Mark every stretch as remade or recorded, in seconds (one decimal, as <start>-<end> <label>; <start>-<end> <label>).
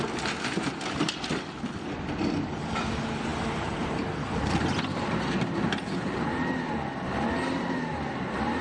0.0-8.6 recorded